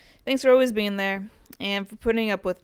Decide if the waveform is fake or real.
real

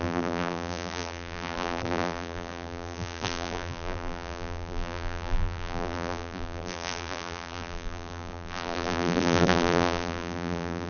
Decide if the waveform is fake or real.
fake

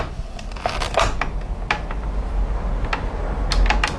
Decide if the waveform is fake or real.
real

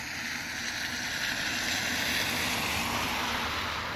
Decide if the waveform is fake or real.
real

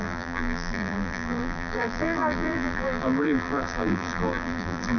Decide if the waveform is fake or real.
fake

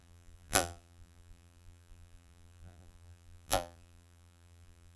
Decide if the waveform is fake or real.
fake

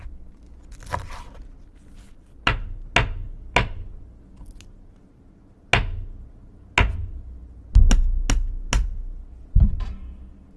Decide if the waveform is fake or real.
real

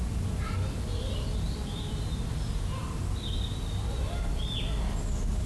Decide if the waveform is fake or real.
real